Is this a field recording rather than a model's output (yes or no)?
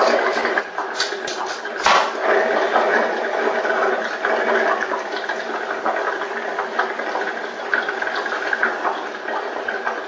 yes